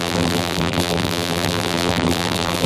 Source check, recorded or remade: remade